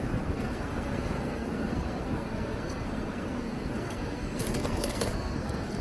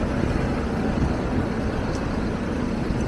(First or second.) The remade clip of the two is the first